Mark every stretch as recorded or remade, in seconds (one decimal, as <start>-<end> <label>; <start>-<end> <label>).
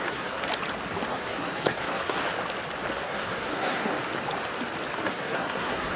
0.0-0.4 remade; 0.4-1.1 recorded; 1.1-2.2 remade; 2.2-2.9 recorded; 2.9-3.9 remade; 3.9-5.1 recorded; 5.1-6.0 remade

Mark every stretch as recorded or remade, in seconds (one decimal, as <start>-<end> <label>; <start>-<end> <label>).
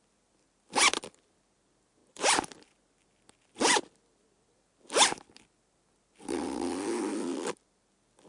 0.0-8.3 recorded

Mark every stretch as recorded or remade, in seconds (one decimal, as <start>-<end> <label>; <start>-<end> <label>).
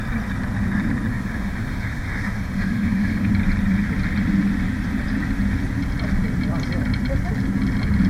0.0-1.1 recorded; 1.1-3.3 remade; 3.3-8.1 recorded